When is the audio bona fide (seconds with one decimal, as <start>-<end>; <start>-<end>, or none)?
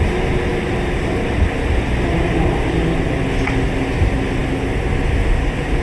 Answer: 0.0-5.8